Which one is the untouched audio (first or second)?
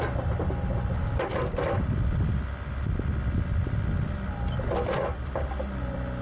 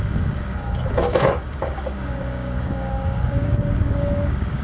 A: first